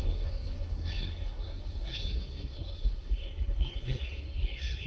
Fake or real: fake